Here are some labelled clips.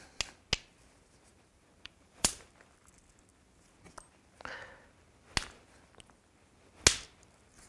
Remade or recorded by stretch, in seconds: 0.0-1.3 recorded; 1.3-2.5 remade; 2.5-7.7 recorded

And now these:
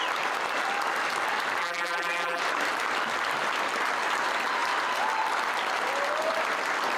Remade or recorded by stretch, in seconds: 0.0-1.6 recorded; 1.6-2.4 remade; 2.4-7.0 recorded

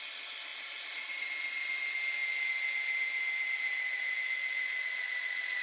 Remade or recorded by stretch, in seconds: 0.0-0.5 recorded; 0.5-1.3 remade; 1.3-5.6 recorded

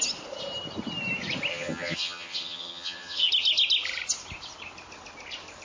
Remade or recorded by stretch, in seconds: 0.0-1.5 recorded; 1.5-3.3 remade; 3.3-5.6 recorded

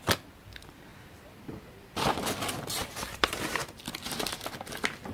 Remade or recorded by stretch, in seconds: 0.0-0.9 recorded; 0.9-1.7 remade; 1.7-2.8 recorded; 2.8-3.8 remade; 3.8-5.1 recorded

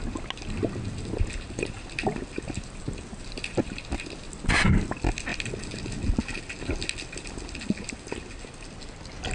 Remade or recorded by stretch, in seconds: 0.0-9.3 recorded